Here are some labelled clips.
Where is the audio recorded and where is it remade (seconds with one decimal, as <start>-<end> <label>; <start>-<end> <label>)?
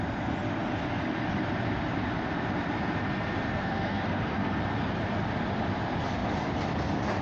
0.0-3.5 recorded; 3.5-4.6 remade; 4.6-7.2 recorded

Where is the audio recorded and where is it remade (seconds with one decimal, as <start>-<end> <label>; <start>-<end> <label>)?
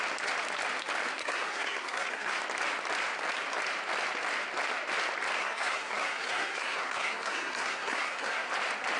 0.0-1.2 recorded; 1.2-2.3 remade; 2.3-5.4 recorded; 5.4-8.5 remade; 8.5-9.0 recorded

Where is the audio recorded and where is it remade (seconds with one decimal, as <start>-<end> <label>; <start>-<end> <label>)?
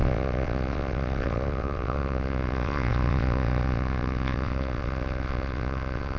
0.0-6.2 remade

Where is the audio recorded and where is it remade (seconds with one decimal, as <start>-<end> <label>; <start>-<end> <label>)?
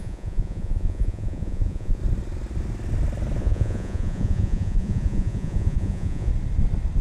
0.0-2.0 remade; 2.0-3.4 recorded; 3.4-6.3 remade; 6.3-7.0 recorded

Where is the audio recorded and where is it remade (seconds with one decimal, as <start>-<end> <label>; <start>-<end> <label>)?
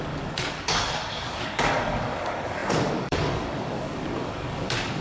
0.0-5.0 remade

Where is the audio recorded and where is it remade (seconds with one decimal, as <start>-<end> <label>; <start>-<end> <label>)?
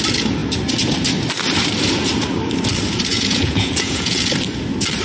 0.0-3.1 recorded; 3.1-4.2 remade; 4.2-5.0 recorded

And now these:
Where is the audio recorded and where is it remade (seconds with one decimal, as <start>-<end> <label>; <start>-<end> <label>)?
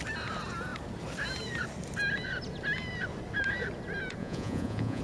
0.0-4.2 recorded; 4.2-5.0 remade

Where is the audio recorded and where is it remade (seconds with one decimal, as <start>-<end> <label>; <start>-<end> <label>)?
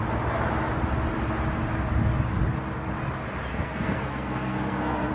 0.0-3.5 recorded; 3.5-5.1 remade